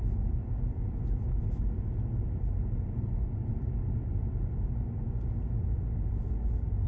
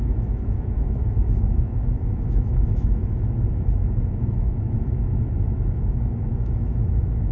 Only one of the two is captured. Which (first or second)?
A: first